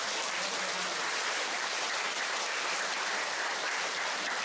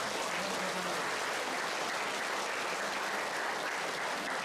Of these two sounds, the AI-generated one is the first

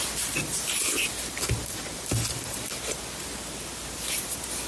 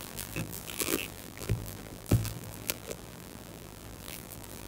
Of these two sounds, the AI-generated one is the second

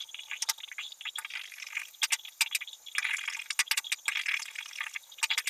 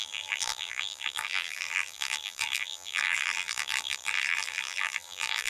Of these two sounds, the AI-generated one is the second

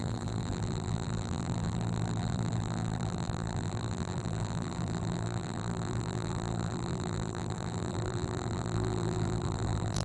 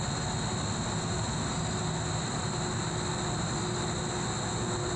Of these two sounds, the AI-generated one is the first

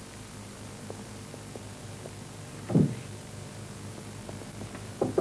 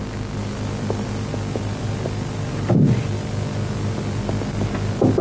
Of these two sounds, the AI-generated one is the first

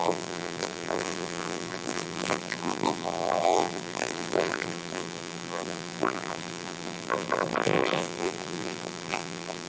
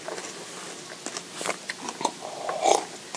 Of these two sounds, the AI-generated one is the first